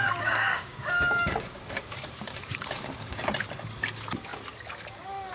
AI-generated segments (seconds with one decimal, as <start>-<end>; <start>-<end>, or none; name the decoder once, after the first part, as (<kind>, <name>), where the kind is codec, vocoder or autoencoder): 0.0-3.2 (codec, DAC)